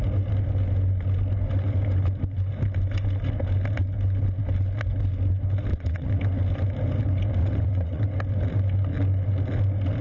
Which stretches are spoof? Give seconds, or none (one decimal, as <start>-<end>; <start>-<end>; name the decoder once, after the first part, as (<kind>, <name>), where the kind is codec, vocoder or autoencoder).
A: 5.7-6.2 (vocoder, WaveNeXt); 7.4-8.0